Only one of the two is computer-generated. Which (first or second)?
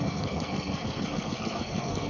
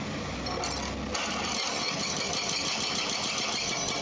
first